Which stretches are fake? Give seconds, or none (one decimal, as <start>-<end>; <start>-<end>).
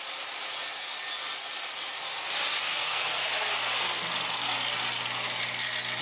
2.7-3.2